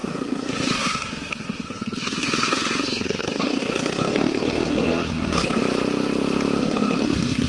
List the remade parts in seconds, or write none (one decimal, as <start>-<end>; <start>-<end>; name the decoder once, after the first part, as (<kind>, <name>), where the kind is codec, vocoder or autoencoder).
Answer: 0.0-5.6 (codec, SNAC); 6.6-7.5